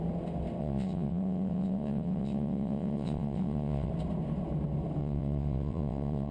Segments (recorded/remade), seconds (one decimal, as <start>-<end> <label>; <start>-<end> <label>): 0.0-0.6 recorded; 0.6-3.9 remade; 3.9-5.0 recorded; 5.0-6.3 remade